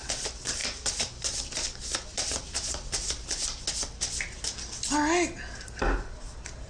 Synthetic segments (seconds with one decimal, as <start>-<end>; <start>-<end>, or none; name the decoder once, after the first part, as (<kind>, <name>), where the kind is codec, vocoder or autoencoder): none